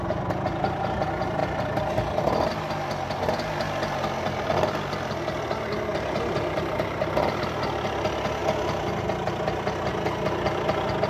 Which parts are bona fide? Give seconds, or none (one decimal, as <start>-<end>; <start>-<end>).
0.0-11.1